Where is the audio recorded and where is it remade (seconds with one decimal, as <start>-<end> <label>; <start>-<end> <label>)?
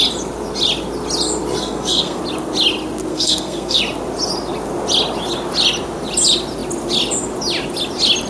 0.0-1.5 recorded; 1.5-2.2 remade; 2.2-3.1 recorded; 3.1-3.8 remade; 3.8-8.3 recorded